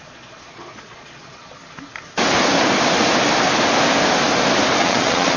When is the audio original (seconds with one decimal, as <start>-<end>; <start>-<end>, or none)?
1.6-4.8

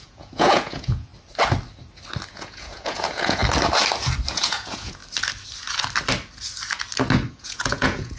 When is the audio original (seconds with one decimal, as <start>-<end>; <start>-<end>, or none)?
1.1-2.3; 3.4-4.3; 5.0-7.3

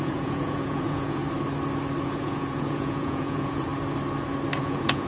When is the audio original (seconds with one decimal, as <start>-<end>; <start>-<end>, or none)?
1.2-2.0; 3.7-4.6